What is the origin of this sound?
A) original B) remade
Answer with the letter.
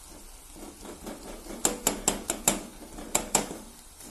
A